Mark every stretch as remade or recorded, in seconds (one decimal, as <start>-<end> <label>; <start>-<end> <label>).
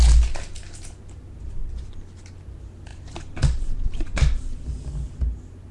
0.0-2.9 recorded; 2.9-4.9 remade; 4.9-5.7 recorded